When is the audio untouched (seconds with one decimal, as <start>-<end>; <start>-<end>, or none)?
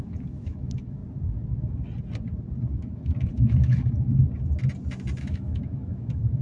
1.0-2.7; 4.2-5.2